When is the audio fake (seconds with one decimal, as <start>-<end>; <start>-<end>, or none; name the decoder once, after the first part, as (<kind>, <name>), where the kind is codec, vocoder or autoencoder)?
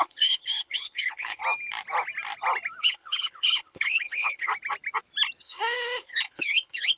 0.0-1.4 (codec, HILCodec); 2.8-4.5; 5.4-7.0